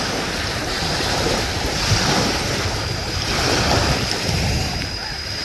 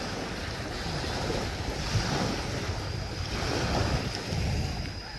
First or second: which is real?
second